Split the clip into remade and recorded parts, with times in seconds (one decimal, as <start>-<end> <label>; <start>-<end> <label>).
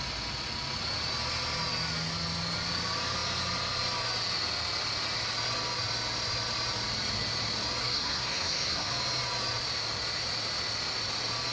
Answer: 0.0-7.8 recorded; 7.8-8.9 remade; 8.9-11.5 recorded